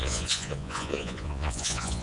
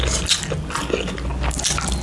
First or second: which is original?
second